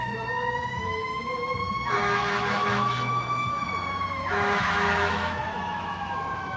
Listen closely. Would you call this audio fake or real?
fake